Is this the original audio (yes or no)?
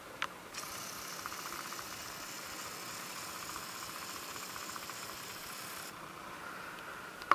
yes